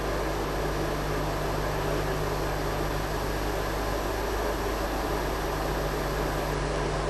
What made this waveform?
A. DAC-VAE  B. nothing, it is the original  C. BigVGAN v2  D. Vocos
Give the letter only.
B